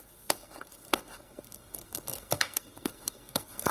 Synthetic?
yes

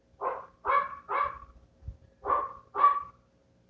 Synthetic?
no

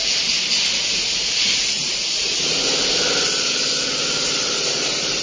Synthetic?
no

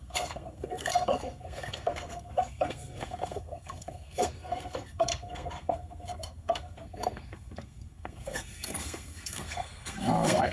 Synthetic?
yes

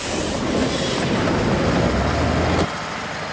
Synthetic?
no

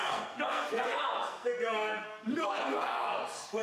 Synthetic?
yes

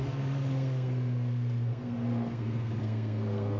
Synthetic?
yes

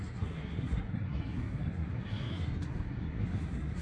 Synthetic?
yes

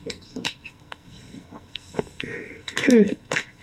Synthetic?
yes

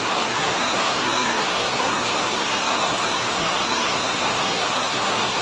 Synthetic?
yes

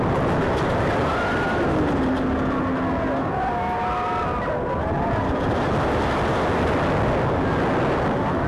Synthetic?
no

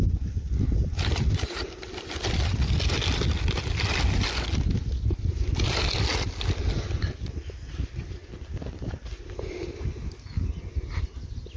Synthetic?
no